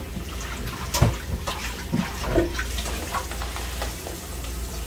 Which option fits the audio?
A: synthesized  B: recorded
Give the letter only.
B